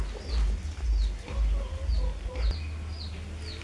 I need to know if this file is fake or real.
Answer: real